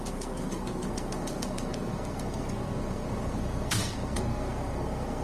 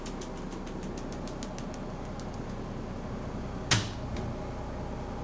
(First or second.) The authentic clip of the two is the second